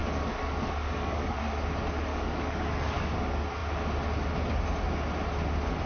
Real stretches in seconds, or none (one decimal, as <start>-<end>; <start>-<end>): 1.4-2.1; 3.1-5.9